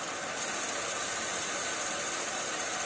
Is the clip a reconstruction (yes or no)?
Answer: no